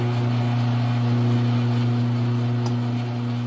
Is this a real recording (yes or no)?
yes